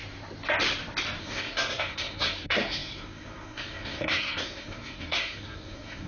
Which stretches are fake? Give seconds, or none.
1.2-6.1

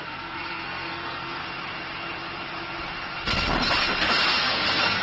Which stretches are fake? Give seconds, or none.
0.0-1.4; 4.4-5.0

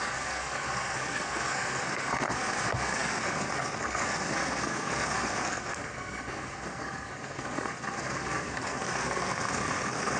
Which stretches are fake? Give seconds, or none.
0.0-10.2

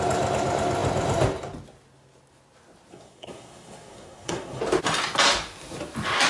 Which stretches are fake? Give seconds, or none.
2.9-4.6

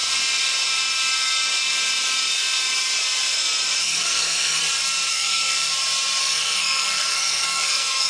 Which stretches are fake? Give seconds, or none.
3.8-4.6; 5.1-5.7; 6.2-8.1

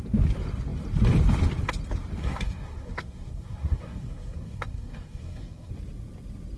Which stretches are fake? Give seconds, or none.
2.2-5.7